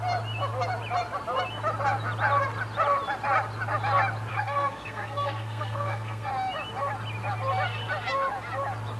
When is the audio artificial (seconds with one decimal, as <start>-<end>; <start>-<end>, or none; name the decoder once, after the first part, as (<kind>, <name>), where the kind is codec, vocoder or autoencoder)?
4.3-6.3 (codec, SNAC)